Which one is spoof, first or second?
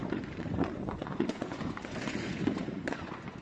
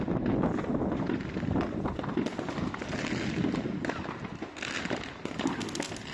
first